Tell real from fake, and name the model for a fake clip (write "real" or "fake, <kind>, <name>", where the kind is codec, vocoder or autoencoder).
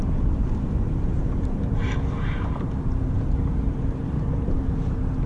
fake, vocoder, BigVGAN v2